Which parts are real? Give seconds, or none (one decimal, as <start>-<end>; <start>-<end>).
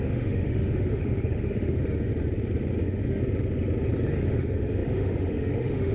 2.1-2.8; 3.2-4.1